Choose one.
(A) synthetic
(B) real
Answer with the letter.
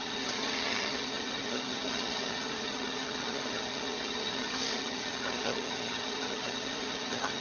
A